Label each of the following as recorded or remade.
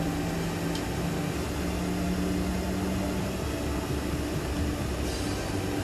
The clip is recorded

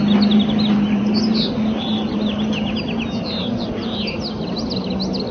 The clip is recorded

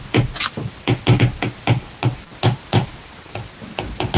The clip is recorded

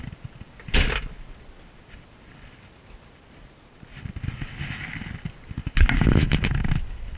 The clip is recorded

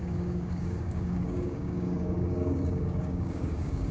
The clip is remade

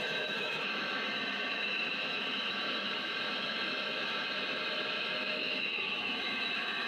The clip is remade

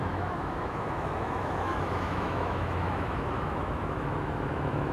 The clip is remade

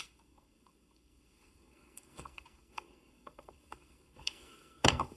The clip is remade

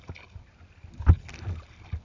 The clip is recorded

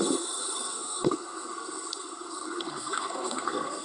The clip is remade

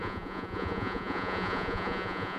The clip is remade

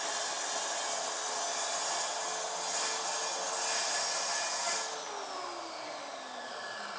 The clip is recorded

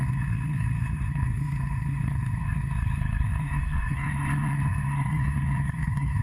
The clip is remade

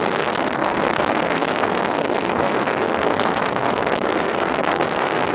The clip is remade